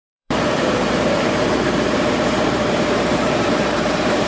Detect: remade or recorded remade